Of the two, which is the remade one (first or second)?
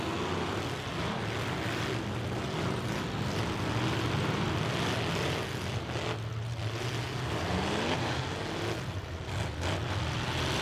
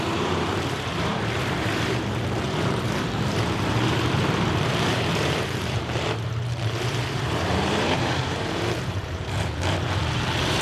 second